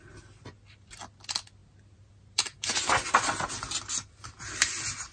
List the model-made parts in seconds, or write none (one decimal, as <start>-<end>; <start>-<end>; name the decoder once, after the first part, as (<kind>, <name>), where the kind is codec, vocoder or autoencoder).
none